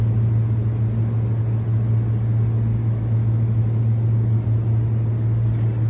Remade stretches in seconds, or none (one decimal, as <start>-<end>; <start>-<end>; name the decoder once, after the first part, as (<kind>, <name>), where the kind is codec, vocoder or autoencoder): 2.8-3.8 (autoencoder, DAC-VAE)